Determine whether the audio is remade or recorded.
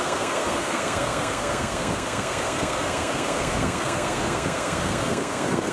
remade